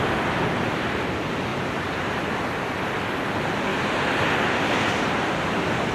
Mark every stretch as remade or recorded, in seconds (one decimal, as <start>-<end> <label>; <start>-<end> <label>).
0.0-1.5 recorded; 1.5-2.2 remade; 2.2-3.7 recorded; 3.7-4.2 remade; 4.2-5.9 recorded